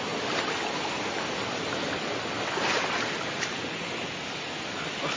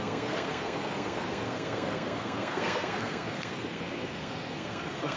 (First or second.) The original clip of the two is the first